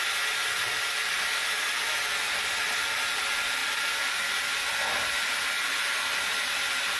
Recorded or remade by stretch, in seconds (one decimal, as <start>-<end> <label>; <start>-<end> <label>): 0.0-7.0 recorded